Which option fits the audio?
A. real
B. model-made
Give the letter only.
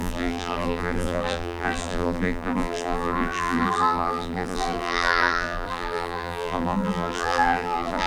B